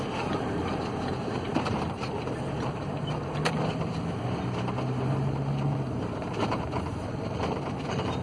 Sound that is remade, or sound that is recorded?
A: remade